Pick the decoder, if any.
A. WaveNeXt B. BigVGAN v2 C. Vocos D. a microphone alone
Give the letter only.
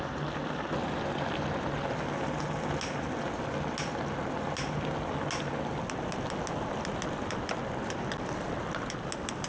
D